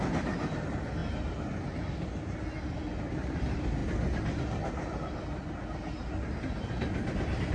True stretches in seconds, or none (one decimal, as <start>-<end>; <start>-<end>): 0.0-7.5

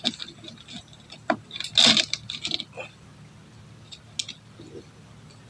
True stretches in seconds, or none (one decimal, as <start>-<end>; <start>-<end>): 0.0-5.5

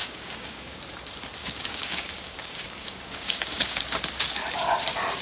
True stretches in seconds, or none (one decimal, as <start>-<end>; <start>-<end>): 0.8-1.4; 3.8-5.2

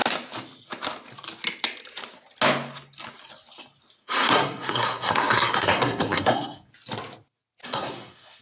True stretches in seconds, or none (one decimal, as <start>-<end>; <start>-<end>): 0.0-4.0; 6.7-7.6

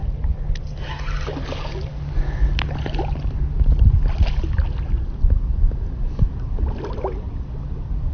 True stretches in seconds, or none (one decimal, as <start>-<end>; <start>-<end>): 0.0-8.1